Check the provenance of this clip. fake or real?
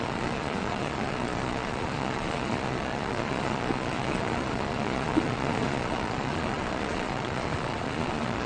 fake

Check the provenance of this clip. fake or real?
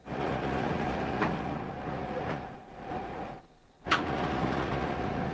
fake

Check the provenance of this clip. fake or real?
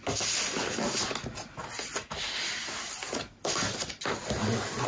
real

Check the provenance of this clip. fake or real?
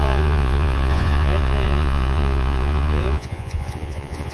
fake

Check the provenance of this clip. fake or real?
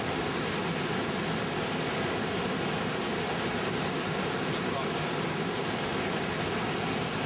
real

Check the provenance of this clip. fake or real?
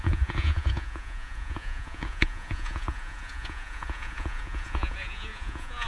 fake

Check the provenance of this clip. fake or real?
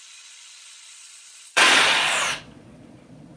fake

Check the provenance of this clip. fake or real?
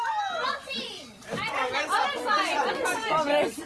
real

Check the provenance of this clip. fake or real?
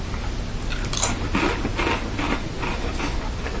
real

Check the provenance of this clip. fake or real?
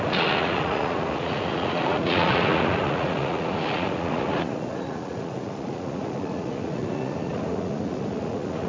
fake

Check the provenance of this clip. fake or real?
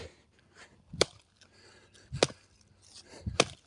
real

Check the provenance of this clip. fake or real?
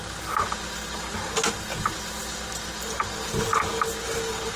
real